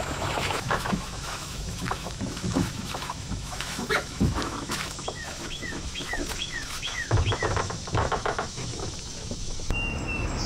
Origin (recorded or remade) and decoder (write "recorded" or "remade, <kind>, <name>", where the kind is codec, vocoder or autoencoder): remade, autoencoder, DAC-VAE